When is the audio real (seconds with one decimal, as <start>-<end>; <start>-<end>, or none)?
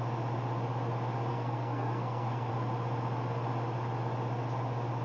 0.0-1.3; 2.5-5.0